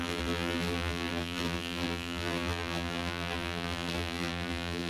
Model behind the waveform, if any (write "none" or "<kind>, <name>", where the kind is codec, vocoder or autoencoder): vocoder, BigVGAN v2